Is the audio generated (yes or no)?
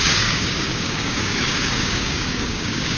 yes